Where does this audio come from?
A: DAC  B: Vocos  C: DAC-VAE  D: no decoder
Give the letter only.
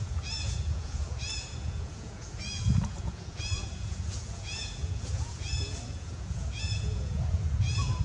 B